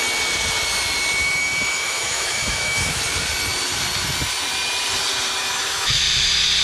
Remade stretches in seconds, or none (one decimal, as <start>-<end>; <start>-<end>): 1.2-3.0; 5.4-6.0